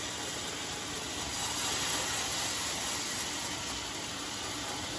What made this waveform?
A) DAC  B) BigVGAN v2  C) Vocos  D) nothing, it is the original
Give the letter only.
D